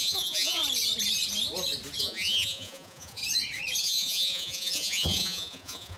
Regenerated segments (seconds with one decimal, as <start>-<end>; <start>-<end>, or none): 0.0-0.6; 2.0-3.2; 3.8-6.0